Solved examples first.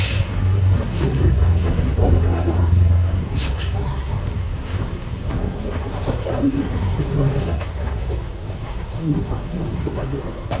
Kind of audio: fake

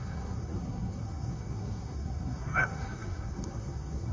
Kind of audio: fake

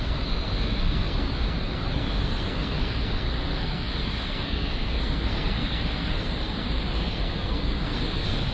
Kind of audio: fake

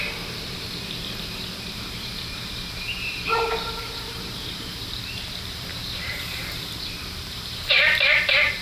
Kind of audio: fake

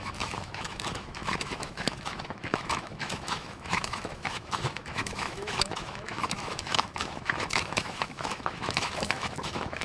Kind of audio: fake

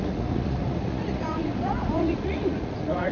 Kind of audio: fake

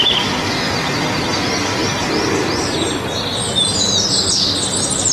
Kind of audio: real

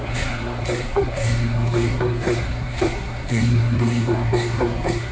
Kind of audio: fake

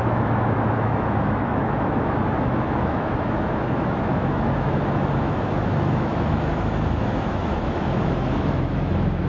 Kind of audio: fake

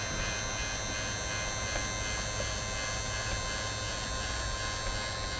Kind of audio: real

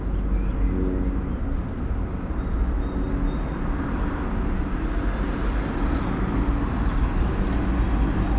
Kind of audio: real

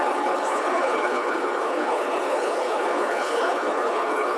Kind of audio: fake